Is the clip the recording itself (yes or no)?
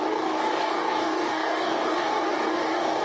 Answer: no